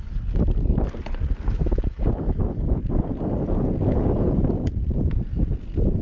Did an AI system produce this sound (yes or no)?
no